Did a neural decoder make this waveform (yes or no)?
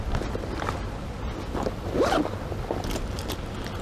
no